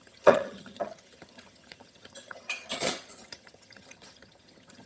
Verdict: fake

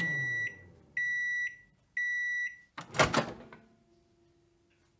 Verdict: real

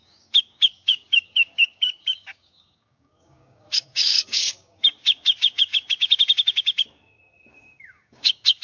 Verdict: fake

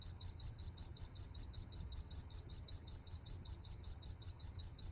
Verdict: fake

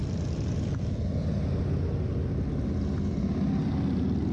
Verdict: real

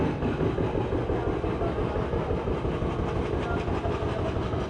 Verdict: real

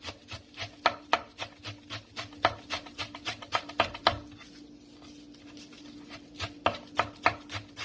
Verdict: real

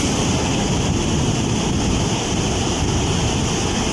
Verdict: real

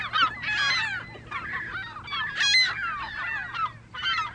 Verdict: real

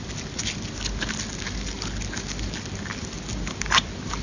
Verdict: real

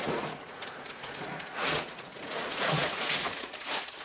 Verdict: fake